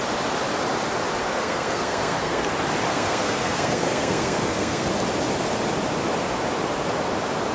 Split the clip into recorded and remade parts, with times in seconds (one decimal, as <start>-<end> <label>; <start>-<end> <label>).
0.0-1.2 recorded; 1.2-2.5 remade; 2.5-2.9 recorded; 2.9-4.9 remade; 4.9-7.5 recorded